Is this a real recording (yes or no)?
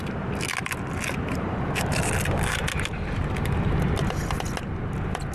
yes